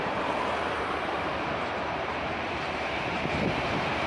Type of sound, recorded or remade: remade